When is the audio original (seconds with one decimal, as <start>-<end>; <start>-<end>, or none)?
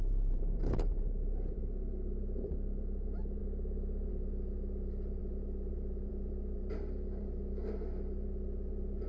3.4-4.1; 6.6-7.2